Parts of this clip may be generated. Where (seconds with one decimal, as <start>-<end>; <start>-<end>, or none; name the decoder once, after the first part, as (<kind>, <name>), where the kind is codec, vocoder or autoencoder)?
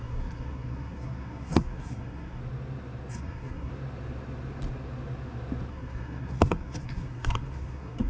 0.0-2.4 (codec, SNAC); 3.1-3.7; 5.7-8.1